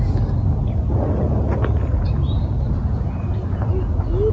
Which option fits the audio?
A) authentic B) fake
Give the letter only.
A